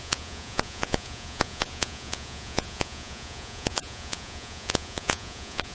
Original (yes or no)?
no